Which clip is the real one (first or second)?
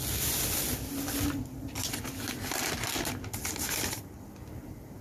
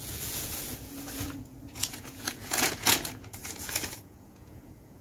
first